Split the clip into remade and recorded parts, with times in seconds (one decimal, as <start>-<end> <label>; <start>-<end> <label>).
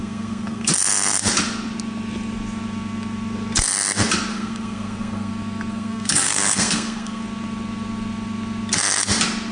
0.0-0.7 remade; 0.7-4.3 recorded; 4.3-5.3 remade; 5.3-5.7 recorded; 5.7-7.2 remade; 7.2-9.5 recorded